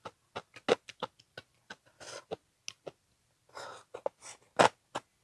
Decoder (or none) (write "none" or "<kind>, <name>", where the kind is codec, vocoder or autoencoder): none